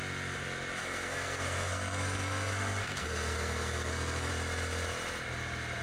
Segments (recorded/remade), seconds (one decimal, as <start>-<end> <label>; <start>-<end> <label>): 0.0-0.8 recorded; 0.8-4.3 remade; 4.3-5.8 recorded